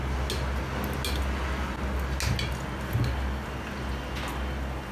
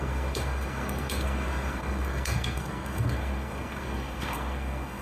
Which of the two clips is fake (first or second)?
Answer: second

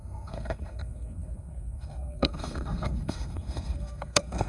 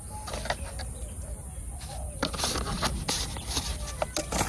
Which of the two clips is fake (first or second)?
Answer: first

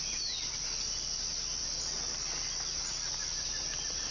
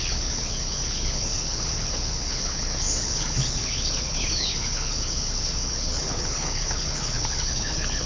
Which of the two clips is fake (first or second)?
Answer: second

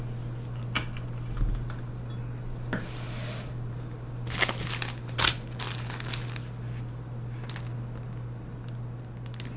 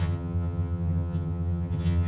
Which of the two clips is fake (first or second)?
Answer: second